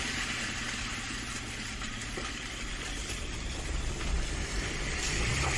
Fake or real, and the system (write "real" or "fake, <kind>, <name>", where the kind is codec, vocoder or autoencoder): real